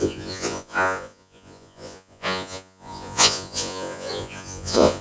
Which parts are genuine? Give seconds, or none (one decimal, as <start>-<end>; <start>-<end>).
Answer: none

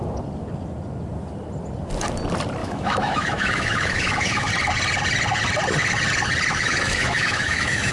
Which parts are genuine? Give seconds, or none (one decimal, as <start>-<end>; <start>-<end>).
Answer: 0.0-2.6; 4.5-6.5